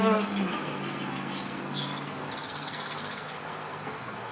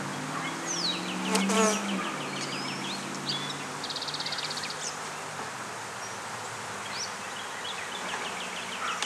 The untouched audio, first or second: second